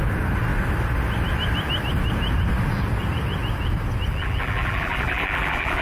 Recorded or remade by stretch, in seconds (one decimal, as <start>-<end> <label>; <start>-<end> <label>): 0.0-4.1 recorded; 4.1-5.8 remade

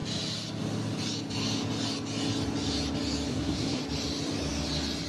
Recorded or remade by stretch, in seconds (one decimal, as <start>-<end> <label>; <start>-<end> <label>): 0.0-3.3 recorded; 3.3-3.8 remade; 3.8-5.1 recorded